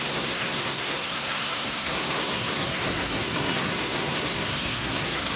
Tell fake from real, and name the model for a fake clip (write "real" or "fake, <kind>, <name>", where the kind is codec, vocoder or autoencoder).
fake, codec, SNAC